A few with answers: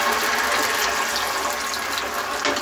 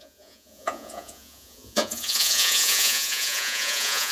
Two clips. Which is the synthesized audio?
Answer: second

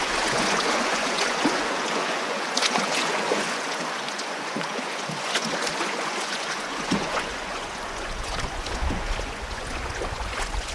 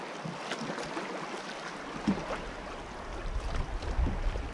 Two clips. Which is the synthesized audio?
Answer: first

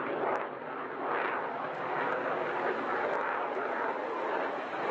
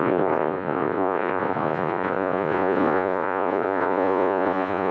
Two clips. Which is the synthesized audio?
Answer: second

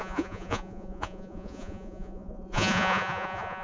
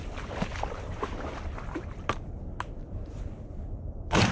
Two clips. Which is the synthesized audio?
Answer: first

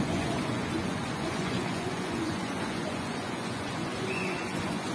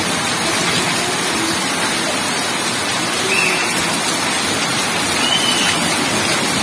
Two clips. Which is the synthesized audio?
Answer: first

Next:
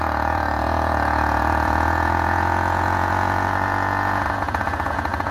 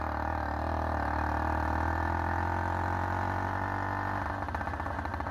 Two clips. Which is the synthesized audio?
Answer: first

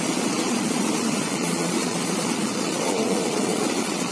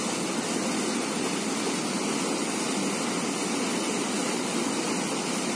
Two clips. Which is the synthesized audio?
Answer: first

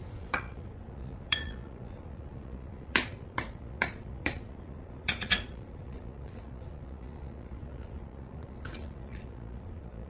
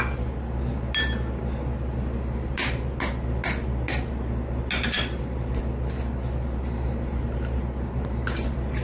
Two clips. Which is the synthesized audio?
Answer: first